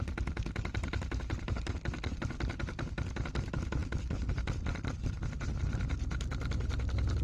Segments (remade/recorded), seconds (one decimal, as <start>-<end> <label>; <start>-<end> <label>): 0.0-7.2 recorded